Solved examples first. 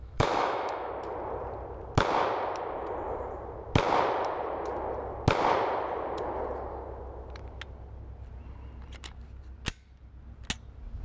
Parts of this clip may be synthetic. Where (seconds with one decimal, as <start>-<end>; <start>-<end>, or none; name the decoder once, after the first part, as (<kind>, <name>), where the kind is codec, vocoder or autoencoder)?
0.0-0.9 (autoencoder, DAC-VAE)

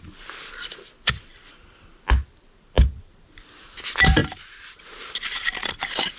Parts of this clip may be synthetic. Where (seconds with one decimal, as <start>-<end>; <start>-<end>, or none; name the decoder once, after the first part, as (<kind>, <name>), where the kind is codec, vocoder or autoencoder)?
none

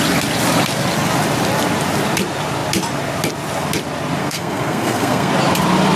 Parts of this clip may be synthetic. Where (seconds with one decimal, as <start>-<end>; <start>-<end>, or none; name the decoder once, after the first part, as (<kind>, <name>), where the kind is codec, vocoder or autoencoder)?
4.2-5.3 (codec, SNAC)

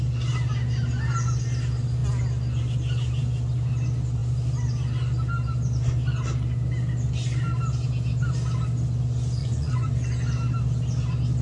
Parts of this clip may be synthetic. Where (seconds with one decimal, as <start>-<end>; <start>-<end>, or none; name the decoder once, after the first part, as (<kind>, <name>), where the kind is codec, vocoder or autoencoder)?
9.4-9.9 (vocoder, Vocos)

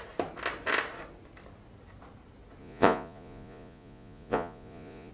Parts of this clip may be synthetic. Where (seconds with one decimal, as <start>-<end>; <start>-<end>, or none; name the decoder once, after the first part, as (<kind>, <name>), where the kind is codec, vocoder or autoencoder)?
2.6-5.1 (vocoder, Vocos)